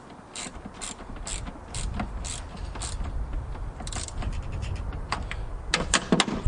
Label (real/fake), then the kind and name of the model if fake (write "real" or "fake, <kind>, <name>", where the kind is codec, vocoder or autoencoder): real